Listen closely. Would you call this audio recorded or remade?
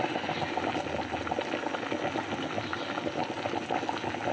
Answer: recorded